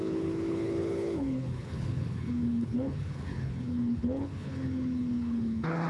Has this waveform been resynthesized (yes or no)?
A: yes